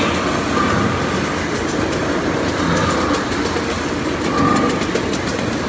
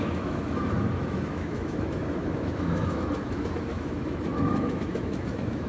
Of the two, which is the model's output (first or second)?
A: second